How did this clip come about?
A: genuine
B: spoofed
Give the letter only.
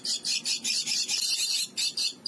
A